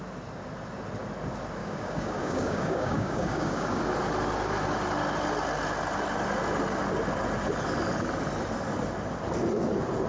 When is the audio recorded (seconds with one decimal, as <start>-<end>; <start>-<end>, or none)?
0.0-1.6; 3.8-10.1